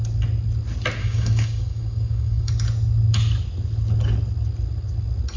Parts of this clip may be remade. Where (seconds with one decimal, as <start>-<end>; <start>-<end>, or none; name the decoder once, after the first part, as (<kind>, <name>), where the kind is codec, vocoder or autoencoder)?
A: 1.0-2.5 (codec, DAC)